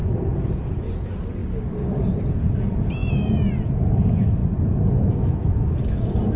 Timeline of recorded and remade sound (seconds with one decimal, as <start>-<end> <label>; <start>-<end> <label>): 0.0-1.4 remade; 1.4-2.0 recorded; 2.0-6.4 remade

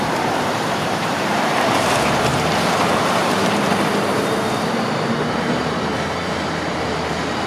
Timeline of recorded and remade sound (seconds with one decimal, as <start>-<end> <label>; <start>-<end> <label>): 0.0-7.5 remade

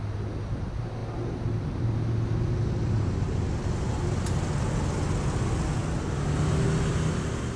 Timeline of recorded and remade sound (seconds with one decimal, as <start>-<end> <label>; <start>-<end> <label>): 0.0-7.6 recorded